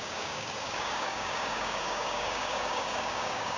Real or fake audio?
fake